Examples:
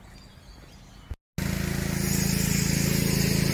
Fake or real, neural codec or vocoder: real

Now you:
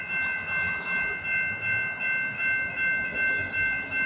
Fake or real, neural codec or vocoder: real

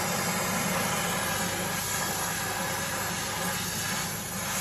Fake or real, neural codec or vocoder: real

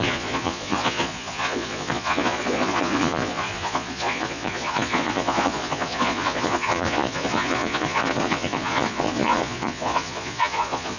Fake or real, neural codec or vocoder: fake, vocoder, Vocos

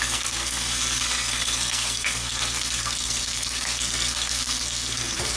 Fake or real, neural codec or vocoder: fake, codec, SNAC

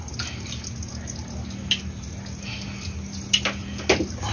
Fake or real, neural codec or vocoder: real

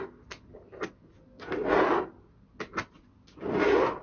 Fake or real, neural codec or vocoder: real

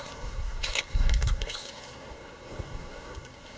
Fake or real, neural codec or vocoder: fake, codec, SNAC